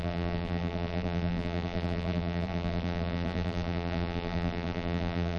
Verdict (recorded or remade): remade